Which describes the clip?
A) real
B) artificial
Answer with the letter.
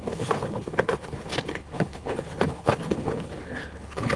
B